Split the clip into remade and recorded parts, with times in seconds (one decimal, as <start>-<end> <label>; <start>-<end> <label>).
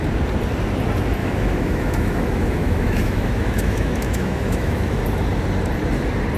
0.0-1.2 recorded; 1.2-5.0 remade; 5.0-6.4 recorded